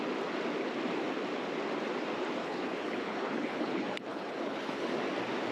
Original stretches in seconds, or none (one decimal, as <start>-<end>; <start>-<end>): 0.0-2.4; 4.9-5.5